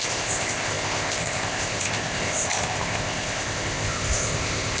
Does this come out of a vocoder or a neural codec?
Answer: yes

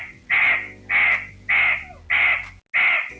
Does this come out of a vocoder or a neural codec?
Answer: no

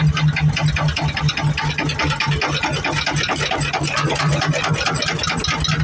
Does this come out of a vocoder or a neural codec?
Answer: no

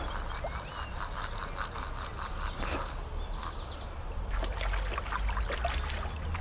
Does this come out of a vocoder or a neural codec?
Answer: no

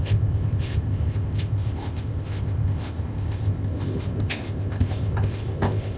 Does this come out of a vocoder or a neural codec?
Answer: yes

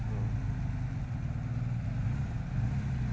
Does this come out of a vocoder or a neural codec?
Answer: no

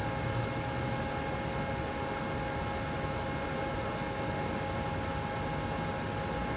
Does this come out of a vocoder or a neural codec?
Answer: no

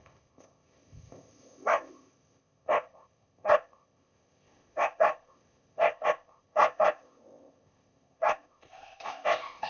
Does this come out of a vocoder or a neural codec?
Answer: yes